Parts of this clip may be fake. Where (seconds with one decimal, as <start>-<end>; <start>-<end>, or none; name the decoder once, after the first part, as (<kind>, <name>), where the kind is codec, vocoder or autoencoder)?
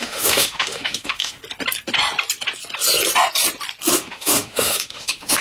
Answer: 0.0-1.4 (autoencoder, DAC-VAE); 3.9-5.4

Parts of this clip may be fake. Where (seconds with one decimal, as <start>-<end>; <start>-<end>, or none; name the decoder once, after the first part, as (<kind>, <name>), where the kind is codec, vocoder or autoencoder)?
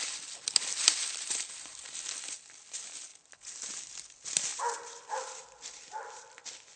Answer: none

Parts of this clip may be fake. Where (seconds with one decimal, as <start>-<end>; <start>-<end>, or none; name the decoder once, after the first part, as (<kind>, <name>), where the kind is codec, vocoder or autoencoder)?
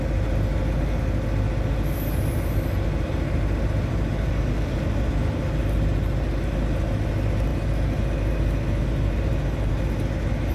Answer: none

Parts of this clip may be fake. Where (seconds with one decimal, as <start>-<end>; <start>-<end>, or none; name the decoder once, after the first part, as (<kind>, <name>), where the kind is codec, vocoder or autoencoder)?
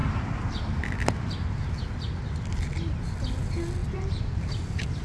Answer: 3.8-5.0 (vocoder, BigVGAN v2)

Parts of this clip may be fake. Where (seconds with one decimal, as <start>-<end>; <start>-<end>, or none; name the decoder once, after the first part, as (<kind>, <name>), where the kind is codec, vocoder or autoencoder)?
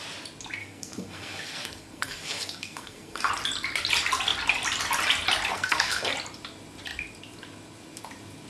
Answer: 0.6-3.3 (codec, SNAC); 5.5-6.1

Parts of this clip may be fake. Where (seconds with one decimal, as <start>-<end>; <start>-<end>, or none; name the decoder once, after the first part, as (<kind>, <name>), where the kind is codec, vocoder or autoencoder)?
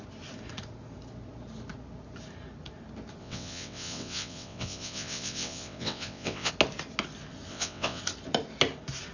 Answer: 3.2-6.5 (vocoder, WaveNeXt); 7.5-8.0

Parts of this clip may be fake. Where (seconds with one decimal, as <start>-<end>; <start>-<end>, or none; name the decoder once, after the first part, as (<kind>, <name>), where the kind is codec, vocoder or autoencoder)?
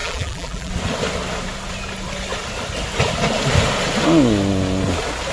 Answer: 0.0-0.7 (vocoder, BigVGAN v2)